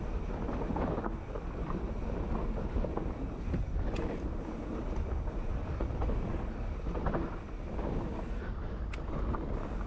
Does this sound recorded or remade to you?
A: recorded